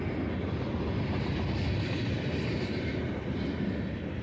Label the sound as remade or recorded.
recorded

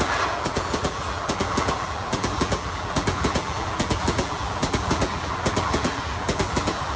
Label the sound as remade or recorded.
remade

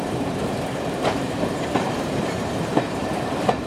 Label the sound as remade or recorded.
remade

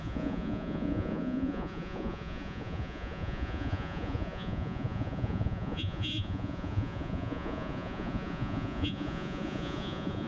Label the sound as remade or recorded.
remade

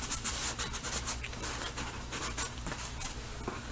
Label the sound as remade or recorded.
remade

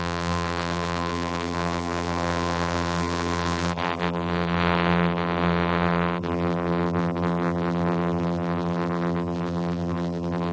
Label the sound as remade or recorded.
remade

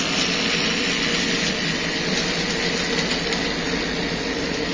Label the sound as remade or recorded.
recorded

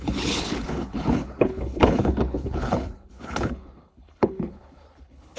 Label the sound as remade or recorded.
remade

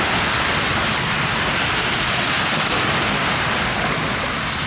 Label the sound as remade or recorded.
recorded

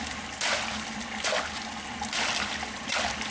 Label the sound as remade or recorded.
recorded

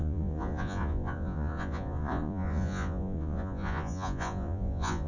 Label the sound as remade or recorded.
remade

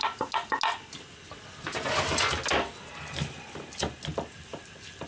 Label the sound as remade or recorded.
recorded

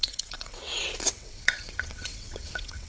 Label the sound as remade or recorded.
remade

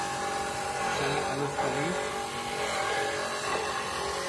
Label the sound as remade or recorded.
recorded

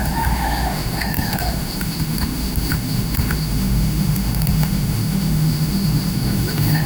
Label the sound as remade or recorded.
remade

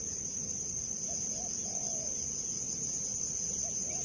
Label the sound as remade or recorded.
recorded